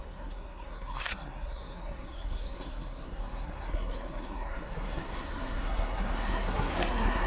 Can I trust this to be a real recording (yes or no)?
no